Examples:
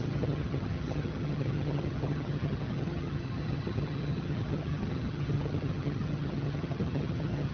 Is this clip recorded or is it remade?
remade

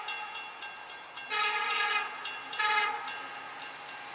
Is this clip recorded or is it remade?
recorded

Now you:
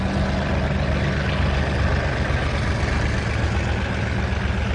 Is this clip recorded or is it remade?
recorded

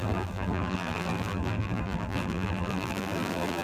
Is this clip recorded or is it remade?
remade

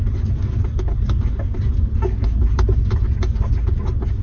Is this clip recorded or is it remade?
recorded